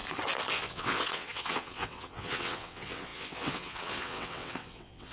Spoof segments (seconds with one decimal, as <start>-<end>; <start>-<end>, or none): 0.5-5.1